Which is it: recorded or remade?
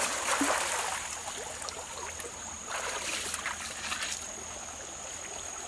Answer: recorded